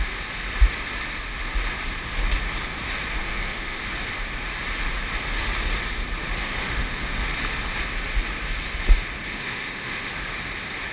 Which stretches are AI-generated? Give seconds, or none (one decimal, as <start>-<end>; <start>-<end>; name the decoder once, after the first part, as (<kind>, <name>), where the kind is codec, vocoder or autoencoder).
3.2-3.8 (autoencoder, DAC-VAE); 6.4-7.0; 9.3-10.1